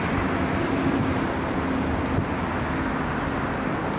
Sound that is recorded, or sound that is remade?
recorded